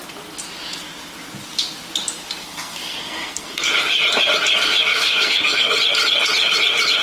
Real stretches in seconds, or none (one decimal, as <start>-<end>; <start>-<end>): 0.0-2.4; 3.7-4.9; 5.8-7.0